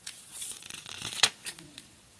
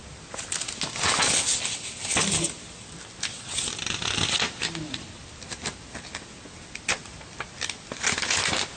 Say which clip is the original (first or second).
second